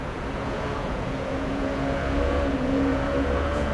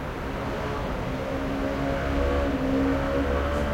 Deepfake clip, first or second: first